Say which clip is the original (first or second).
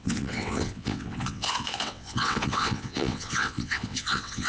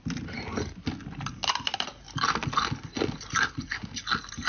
second